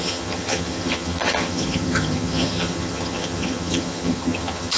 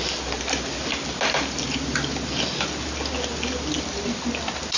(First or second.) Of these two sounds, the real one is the second